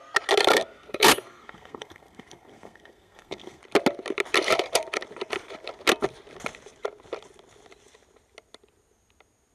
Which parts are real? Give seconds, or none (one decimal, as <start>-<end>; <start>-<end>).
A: 0.0-0.5; 3.6-9.5